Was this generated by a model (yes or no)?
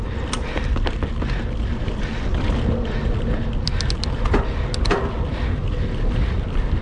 no